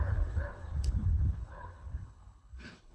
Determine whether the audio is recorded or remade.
remade